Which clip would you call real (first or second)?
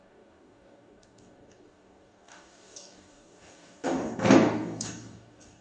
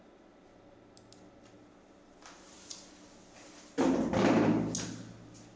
second